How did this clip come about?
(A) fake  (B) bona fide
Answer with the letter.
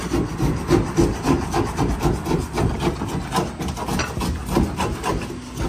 B